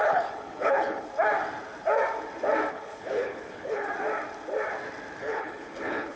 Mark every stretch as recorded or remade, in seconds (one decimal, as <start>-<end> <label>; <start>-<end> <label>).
0.0-1.1 remade; 1.1-2.7 recorded; 2.7-3.9 remade; 3.9-5.2 recorded; 5.2-6.2 remade